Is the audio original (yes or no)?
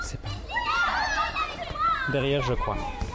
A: yes